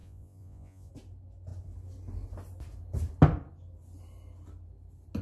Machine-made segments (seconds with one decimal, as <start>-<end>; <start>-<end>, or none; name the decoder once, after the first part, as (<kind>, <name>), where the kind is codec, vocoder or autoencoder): 0.0-0.9 (vocoder, Vocos)